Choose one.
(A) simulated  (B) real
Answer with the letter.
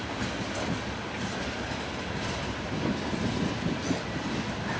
B